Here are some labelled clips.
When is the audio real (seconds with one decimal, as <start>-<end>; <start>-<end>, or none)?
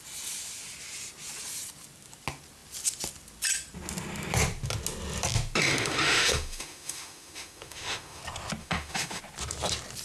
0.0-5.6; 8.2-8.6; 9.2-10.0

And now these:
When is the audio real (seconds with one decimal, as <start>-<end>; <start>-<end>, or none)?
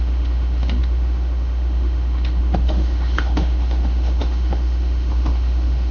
none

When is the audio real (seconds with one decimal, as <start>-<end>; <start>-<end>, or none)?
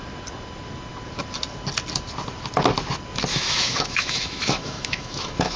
0.0-3.3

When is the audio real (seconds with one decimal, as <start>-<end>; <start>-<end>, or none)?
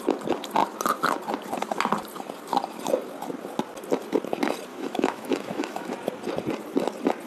0.0-4.7; 5.9-7.3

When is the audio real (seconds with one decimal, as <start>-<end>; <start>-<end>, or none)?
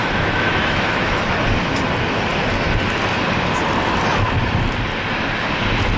1.2-6.0